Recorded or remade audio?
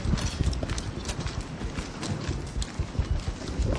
recorded